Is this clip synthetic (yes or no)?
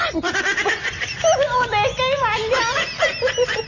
no